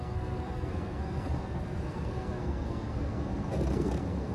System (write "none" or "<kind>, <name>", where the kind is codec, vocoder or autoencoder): codec, SNAC